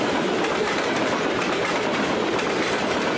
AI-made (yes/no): no